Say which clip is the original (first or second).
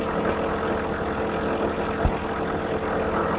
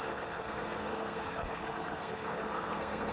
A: first